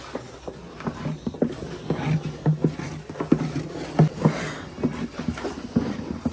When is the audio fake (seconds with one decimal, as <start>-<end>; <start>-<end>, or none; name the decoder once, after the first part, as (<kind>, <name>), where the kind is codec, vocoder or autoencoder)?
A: none